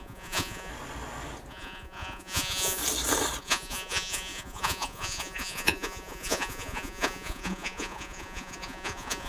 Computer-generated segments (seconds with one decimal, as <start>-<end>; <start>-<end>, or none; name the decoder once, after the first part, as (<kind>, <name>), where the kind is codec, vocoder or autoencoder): 0.0-0.7 (vocoder, Vocos); 1.5-2.8; 3.4-9.3